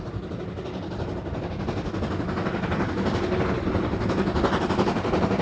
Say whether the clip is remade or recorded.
recorded